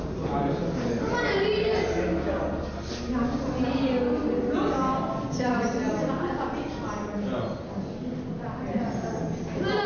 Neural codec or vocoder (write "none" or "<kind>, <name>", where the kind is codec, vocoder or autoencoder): none